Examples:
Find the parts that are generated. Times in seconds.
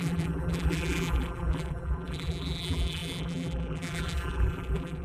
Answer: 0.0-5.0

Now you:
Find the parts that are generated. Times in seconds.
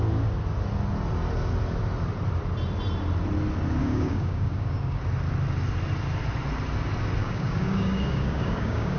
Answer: 3.8-5.0; 7.2-9.0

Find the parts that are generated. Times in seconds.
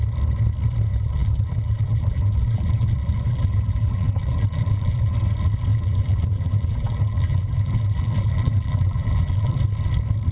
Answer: 0.9-5.1; 5.7-9.6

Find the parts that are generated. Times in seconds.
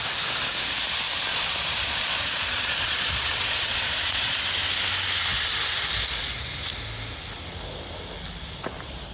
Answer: 1.3-4.4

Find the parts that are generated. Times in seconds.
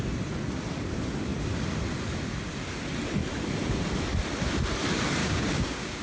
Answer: 5.2-6.0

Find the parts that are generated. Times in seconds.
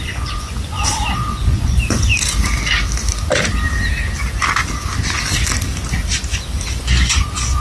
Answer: 0.0-2.1; 6.7-7.6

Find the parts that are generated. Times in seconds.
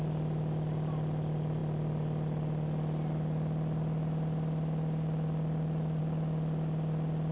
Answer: none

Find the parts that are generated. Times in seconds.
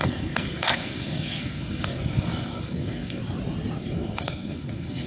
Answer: 0.0-3.2; 3.8-5.1